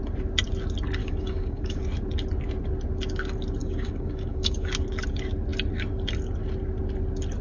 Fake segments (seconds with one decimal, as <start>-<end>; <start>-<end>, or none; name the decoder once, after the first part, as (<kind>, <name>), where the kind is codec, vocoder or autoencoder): 1.0-1.8 (codec, DAC); 3.6-4.7